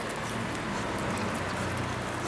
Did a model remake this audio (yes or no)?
no